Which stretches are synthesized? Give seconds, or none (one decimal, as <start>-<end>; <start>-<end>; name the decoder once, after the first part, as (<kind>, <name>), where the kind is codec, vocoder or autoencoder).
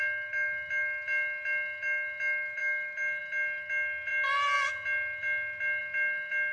none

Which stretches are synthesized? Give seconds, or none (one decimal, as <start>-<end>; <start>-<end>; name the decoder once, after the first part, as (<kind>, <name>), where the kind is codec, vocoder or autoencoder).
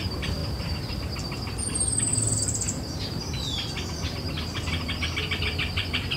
0.0-6.2 (vocoder, BigVGAN v2)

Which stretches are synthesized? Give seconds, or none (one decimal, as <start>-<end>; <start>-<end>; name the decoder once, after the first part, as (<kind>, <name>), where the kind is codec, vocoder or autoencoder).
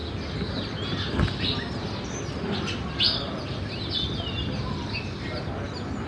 none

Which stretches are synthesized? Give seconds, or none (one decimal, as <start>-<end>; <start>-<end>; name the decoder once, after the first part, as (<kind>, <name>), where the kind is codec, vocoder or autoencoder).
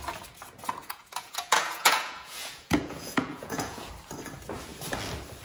0.8-3.9 (vocoder, Vocos)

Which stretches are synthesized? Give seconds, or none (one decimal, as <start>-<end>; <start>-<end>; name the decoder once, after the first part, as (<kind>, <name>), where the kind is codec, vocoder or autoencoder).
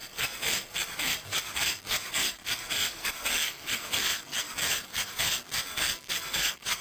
0.0-6.8 (codec, SNAC)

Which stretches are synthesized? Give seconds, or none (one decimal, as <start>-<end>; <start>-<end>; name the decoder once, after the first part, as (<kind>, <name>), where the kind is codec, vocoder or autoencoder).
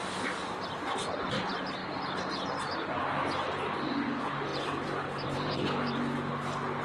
1.8-2.3 (vocoder, BigVGAN v2); 4.5-6.3